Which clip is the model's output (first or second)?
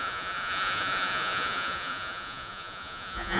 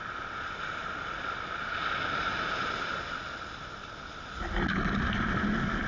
first